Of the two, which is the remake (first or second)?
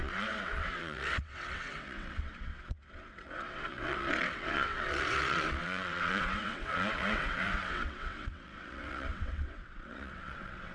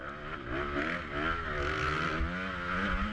first